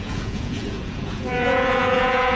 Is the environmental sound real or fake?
fake